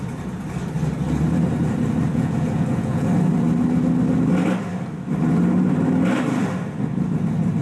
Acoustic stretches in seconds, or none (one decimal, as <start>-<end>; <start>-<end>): 0.0-2.1; 3.1-7.6